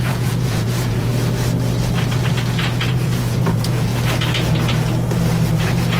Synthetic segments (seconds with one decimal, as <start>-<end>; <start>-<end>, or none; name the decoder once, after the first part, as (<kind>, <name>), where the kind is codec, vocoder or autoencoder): 0.0-1.1 (vocoder, Vocos); 2.9-3.9; 5.5-6.0